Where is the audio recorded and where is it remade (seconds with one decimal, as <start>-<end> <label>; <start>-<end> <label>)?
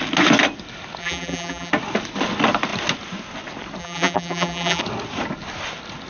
0.0-1.0 recorded; 1.0-1.7 remade; 1.7-3.8 recorded; 3.8-4.8 remade; 4.8-6.1 recorded